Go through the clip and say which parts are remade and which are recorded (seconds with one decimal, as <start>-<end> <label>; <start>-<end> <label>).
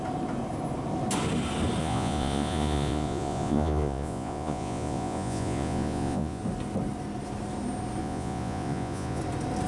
0.0-1.8 recorded; 1.8-6.4 remade; 6.4-8.0 recorded; 8.0-9.2 remade; 9.2-9.7 recorded